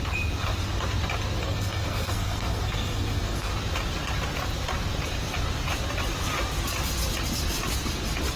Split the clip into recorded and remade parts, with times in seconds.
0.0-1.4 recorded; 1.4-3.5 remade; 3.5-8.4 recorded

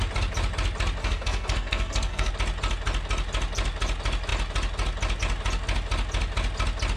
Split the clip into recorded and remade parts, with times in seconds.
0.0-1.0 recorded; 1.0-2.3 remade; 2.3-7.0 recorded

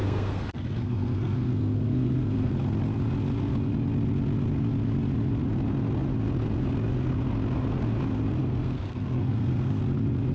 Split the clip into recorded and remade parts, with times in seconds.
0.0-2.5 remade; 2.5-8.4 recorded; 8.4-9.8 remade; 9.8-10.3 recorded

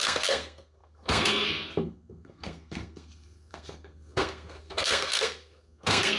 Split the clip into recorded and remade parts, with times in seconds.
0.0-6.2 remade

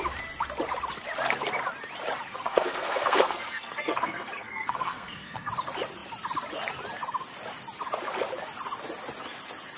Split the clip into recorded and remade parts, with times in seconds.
0.0-2.3 recorded; 2.3-5.5 remade; 5.5-9.8 recorded

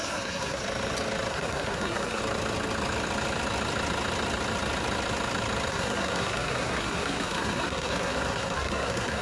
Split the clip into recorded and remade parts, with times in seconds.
0.0-0.6 remade; 0.6-1.3 recorded; 1.3-2.2 remade; 2.2-5.7 recorded; 5.7-9.2 remade

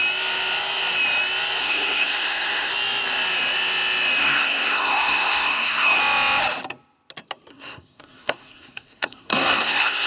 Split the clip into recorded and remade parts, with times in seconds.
0.0-1.6 recorded; 1.6-2.7 remade; 2.7-4.2 recorded; 4.2-6.0 remade; 6.0-7.5 recorded; 7.5-10.1 remade

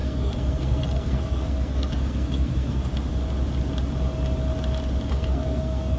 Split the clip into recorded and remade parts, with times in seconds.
0.0-2.9 remade; 2.9-5.1 recorded; 5.1-6.0 remade